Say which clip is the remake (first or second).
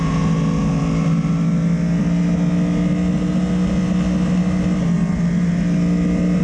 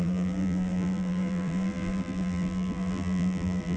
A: second